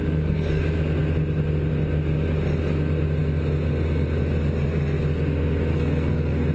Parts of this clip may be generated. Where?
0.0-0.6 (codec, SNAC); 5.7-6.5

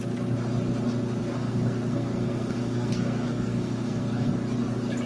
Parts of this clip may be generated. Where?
1.2-4.3 (codec, SNAC)

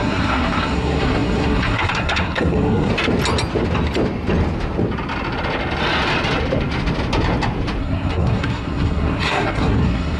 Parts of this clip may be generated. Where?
0.0-2.9 (codec, SNAC); 7.8-10.2

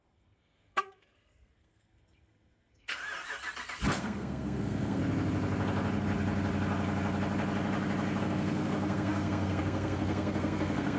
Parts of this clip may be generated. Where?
0.0-3.0 (codec, SNAC); 4.0-5.0; 8.2-11.0

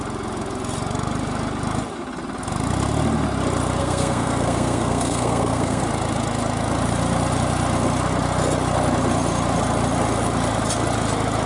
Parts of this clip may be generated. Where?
3.8-5.8 (codec, SNAC)

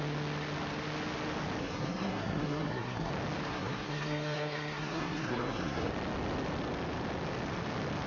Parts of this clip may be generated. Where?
1.6-3.1 (codec, SNAC); 3.5-5.9